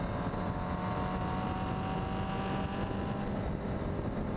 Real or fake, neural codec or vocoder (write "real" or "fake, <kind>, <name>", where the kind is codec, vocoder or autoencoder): real